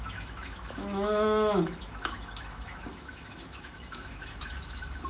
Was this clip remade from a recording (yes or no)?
yes